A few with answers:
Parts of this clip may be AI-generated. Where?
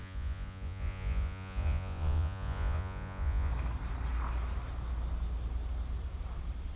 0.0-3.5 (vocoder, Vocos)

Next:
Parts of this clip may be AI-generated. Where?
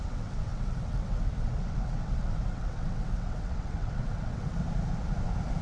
0.0-4.6 (vocoder, WaveNeXt)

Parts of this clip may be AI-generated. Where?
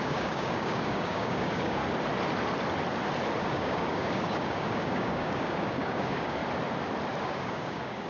0.0-1.8 (codec, DAC); 3.4-6.4; 7.2-8.1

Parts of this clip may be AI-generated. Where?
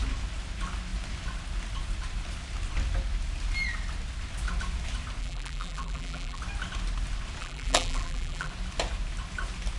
5.2-6.4 (vocoder, BigVGAN v2); 7.4-8.5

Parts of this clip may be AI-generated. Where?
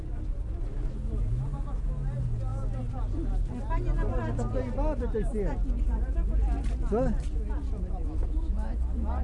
none